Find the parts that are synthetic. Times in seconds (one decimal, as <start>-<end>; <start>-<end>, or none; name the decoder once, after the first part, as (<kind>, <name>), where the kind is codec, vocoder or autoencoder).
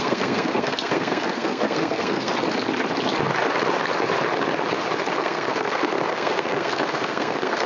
0.0-2.3 (codec, SNAC); 5.1-7.7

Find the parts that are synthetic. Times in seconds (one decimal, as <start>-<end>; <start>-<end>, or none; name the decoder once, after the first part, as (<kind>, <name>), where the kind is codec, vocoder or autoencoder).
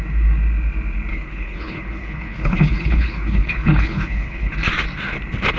1.1-4.5 (codec, HILCodec)